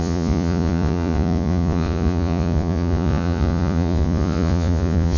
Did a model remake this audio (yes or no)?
yes